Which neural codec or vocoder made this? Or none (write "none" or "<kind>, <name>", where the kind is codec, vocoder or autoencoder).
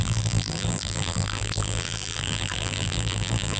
vocoder, BigVGAN v2